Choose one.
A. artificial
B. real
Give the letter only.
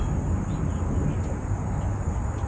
B